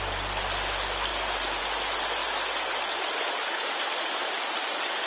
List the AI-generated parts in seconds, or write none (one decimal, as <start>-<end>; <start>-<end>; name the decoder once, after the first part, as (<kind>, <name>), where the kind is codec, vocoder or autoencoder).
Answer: none